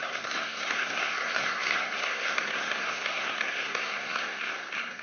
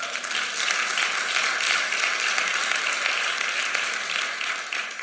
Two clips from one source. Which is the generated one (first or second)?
first